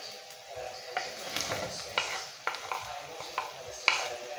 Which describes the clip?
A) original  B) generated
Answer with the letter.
A